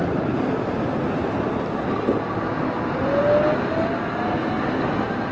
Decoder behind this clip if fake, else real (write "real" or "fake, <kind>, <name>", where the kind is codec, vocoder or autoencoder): real